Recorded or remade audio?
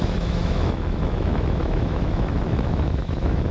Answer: remade